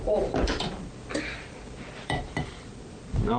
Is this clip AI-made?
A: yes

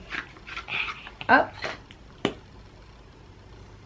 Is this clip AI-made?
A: no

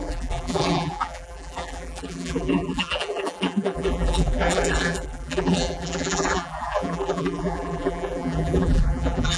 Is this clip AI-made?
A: yes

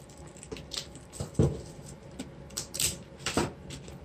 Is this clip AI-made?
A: yes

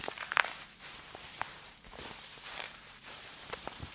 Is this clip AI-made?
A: yes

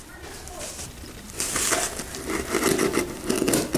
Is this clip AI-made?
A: no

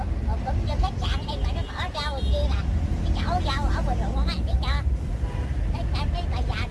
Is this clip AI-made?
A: no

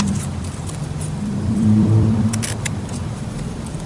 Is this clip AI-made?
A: yes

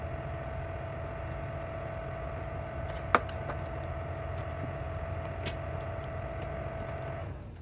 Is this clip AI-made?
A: no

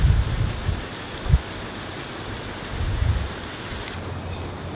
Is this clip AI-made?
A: no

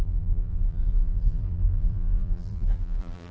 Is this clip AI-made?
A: yes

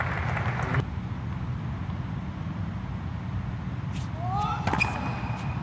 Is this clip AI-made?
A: no